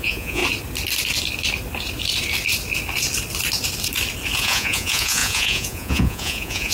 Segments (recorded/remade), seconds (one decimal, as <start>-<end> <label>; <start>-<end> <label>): 0.0-0.4 remade; 0.4-4.4 recorded; 4.4-6.7 remade